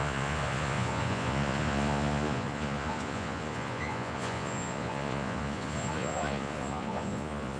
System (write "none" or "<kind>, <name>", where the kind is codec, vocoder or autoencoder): vocoder, Vocos